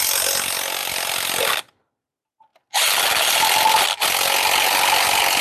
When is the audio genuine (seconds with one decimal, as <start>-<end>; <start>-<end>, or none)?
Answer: 0.0-0.8; 1.9-5.4